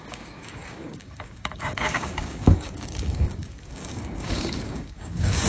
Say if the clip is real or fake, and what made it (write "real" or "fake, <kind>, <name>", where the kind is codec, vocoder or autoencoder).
fake, codec, DAC